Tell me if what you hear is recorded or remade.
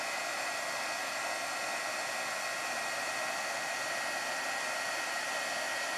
recorded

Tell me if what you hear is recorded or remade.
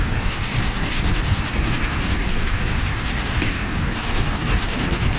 remade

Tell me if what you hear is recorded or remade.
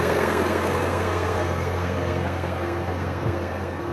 remade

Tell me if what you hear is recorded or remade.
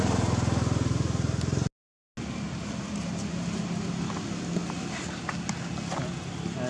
recorded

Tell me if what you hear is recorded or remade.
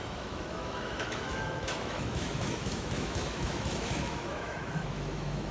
remade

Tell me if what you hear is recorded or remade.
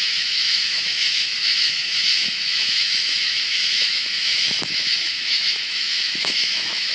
remade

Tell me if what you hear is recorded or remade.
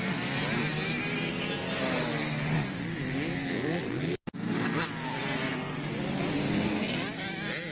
recorded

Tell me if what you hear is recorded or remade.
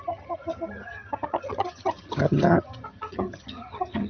remade